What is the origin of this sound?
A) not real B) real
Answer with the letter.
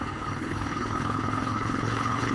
A